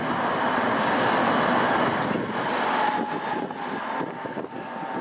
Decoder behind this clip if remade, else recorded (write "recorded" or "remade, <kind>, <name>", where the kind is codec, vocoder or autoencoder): recorded